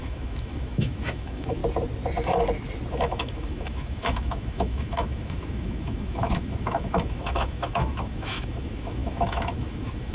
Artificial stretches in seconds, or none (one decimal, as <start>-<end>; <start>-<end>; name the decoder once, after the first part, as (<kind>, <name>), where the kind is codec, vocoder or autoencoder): 0.0-1.6 (autoencoder, DAC-VAE); 2.9-10.1